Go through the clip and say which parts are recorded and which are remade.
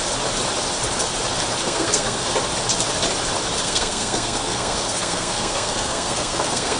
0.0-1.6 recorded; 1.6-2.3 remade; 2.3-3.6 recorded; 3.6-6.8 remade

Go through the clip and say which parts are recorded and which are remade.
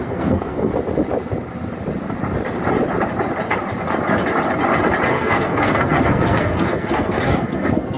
0.0-0.7 remade; 0.7-5.1 recorded; 5.1-8.0 remade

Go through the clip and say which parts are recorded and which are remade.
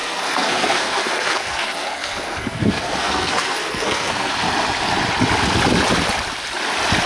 0.0-4.3 remade; 4.3-7.1 recorded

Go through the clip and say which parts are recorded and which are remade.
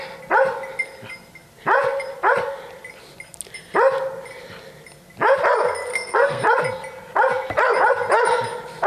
0.0-5.9 recorded; 5.9-6.4 remade; 6.4-8.9 recorded